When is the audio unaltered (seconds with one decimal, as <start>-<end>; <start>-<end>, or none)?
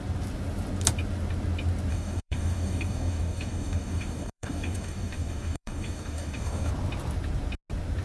0.0-1.9; 6.7-8.0